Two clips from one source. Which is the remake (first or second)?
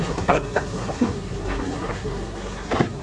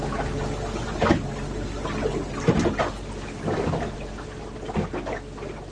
first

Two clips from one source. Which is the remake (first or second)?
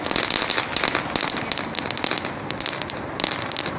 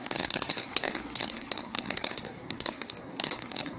second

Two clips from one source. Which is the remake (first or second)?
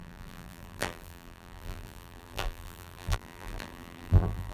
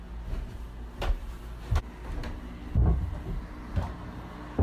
first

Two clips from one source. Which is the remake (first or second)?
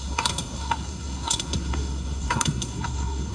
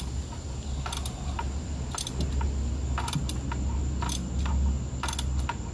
first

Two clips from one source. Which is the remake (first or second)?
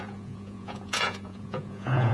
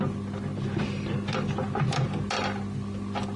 first